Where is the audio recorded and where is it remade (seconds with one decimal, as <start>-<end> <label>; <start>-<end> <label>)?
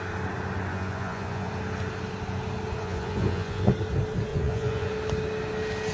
0.0-0.7 recorded; 0.7-1.5 remade; 1.5-2.8 recorded; 2.8-3.7 remade; 3.7-4.3 recorded; 4.3-4.9 remade; 4.9-5.9 recorded